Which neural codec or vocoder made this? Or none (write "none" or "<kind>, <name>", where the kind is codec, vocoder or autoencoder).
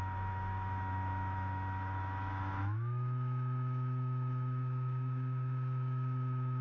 autoencoder, DAC-VAE